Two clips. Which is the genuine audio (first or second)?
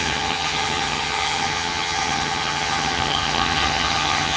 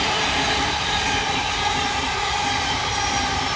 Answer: second